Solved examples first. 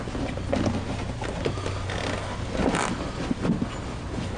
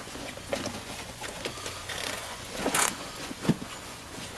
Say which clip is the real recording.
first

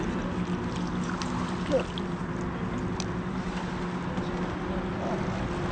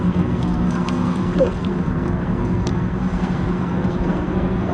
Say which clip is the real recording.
first